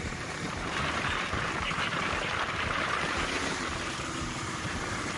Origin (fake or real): fake